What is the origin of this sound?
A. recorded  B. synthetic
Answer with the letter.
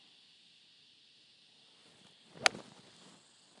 A